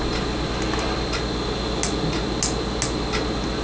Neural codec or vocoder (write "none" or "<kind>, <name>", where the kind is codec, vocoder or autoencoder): none